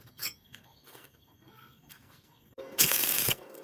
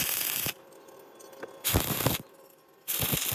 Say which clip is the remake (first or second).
first